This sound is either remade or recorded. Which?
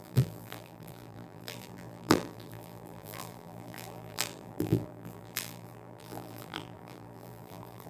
remade